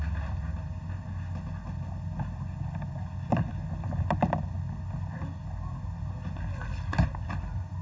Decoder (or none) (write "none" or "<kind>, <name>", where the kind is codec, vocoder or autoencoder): none